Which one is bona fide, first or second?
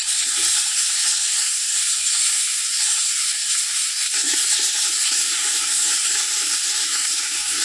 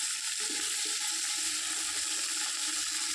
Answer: second